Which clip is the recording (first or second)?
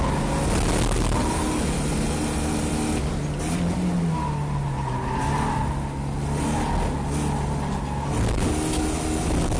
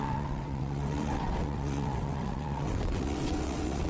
first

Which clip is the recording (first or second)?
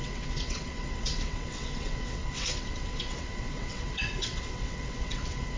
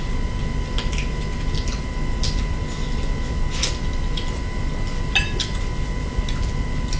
second